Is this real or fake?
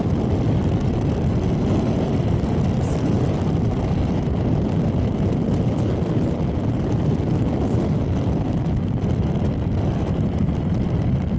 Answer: real